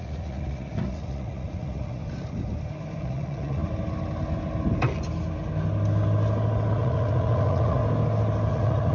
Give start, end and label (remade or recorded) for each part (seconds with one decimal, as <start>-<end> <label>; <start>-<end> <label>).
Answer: 0.0-2.0 remade; 2.0-3.0 recorded; 3.0-3.6 remade; 3.6-6.7 recorded; 6.7-7.8 remade; 7.8-8.5 recorded; 8.5-8.9 remade